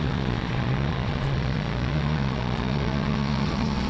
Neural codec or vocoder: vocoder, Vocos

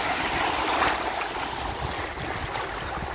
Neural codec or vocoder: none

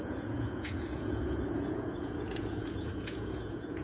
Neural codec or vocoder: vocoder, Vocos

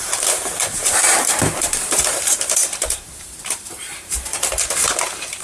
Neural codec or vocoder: vocoder, BigVGAN v2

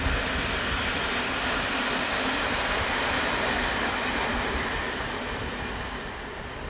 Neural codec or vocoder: none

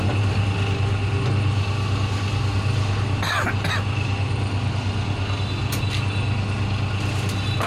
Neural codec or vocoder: none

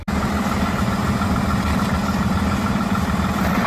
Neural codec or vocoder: none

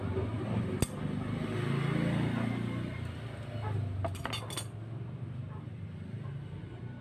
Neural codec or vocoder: none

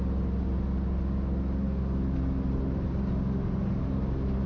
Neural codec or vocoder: none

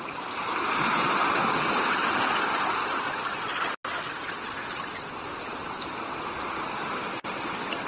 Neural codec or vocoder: none